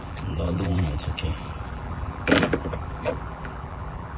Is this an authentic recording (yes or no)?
no